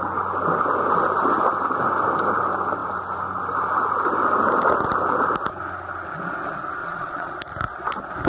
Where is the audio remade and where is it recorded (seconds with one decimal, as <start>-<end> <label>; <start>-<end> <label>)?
0.0-6.8 recorded; 6.8-7.3 remade; 7.3-8.3 recorded